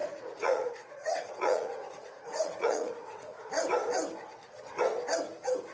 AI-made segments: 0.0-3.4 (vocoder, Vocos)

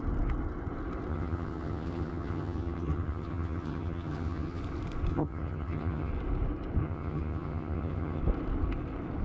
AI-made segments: 1.1-4.6 (vocoder, HiFi-GAN); 5.1-6.1; 6.8-8.2

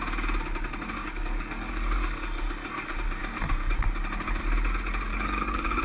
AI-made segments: 1.0-1.7 (codec, DAC); 5.1-5.8

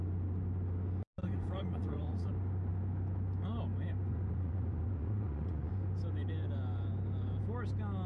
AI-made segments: 1.2-2.3 (vocoder, Vocos); 4.1-5.7

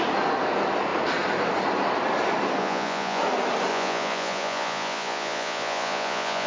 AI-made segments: 2.6-3.2 (vocoder, Vocos); 3.7-6.5

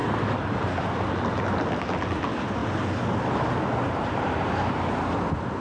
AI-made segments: none